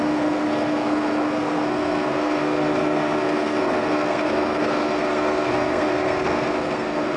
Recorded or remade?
remade